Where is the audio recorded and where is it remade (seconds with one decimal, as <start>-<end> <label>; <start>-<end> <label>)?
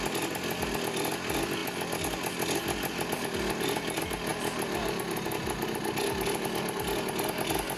0.0-7.8 recorded